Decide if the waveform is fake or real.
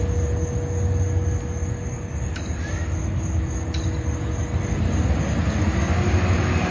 real